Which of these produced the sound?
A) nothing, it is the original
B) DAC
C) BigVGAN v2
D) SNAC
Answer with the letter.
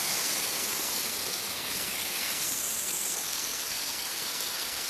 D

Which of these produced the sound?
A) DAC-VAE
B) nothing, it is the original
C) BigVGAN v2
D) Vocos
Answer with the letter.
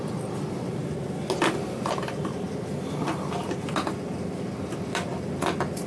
B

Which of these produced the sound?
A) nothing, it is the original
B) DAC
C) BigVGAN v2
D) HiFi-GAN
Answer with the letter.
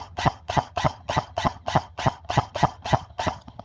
D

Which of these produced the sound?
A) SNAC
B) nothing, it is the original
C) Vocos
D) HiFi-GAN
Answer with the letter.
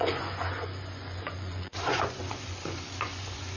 C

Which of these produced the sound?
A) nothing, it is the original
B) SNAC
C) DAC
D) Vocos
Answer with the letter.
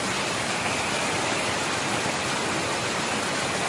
A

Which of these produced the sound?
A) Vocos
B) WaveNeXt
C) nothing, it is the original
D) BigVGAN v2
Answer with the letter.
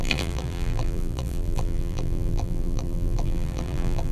D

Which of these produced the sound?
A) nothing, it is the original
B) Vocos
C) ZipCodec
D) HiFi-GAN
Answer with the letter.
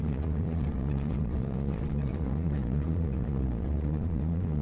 B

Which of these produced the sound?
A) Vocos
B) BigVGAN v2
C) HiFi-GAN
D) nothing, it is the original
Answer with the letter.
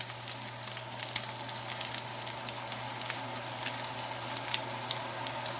D